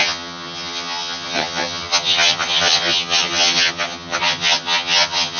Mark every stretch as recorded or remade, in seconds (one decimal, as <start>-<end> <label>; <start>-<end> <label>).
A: 0.0-5.4 remade